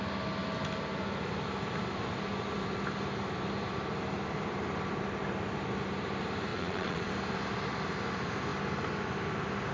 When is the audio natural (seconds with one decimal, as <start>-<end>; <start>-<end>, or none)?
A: 0.0-6.5; 7.1-9.7